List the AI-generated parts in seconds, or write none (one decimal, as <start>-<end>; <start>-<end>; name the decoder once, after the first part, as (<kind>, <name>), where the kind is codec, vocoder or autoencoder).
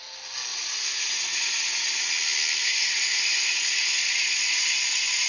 0.5-2.1 (vocoder, Vocos); 2.6-5.3